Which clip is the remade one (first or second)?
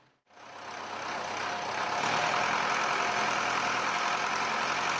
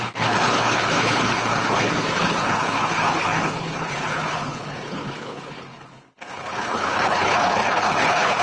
second